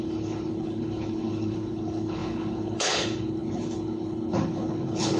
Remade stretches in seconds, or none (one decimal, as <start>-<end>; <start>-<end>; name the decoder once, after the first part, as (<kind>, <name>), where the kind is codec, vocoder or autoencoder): 0.0-5.2 (codec, HILCodec)